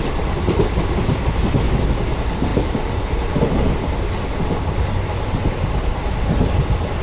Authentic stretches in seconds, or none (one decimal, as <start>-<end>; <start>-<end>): 0.0-7.0